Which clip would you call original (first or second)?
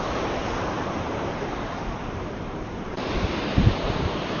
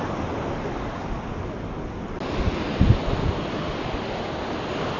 second